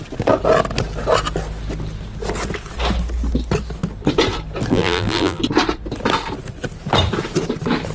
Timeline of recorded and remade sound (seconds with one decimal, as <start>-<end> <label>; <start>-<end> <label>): 0.0-4.7 recorded; 4.7-5.4 remade; 5.4-7.9 recorded